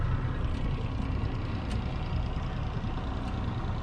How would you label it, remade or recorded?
recorded